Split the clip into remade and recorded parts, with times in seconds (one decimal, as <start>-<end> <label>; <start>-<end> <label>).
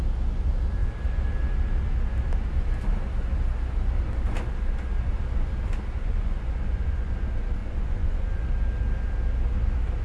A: 0.0-6.0 recorded; 6.0-7.1 remade; 7.1-7.6 recorded; 7.6-8.5 remade; 8.5-10.0 recorded